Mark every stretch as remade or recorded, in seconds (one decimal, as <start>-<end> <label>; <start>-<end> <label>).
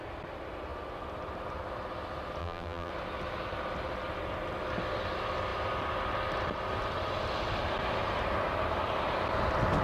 0.0-2.4 recorded; 2.4-2.9 remade; 2.9-9.8 recorded